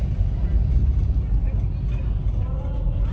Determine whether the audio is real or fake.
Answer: real